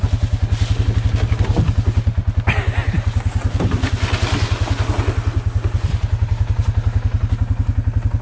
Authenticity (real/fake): real